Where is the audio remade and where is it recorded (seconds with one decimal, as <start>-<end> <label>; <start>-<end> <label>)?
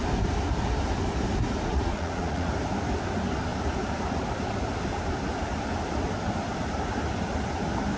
0.0-1.7 recorded; 1.7-2.5 remade; 2.5-8.0 recorded